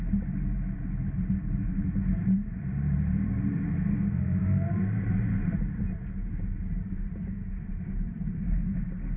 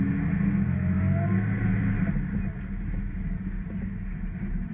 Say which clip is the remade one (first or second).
first